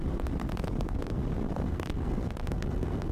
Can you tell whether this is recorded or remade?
remade